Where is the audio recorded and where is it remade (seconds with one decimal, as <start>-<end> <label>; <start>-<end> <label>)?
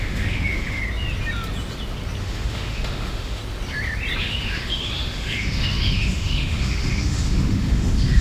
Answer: 0.0-0.8 remade; 0.8-2.2 recorded; 2.2-3.4 remade; 3.4-4.2 recorded; 4.2-8.2 remade